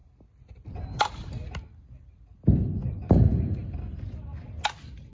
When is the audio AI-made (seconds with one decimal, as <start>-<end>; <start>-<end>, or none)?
none